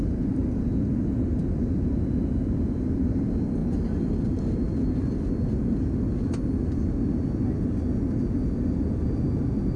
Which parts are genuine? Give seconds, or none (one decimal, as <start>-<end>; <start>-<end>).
0.4-1.4; 3.6-8.9